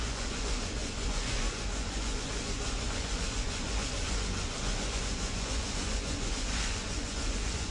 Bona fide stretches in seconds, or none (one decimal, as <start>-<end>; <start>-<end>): none